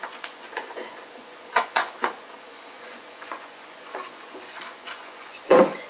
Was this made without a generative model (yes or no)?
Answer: no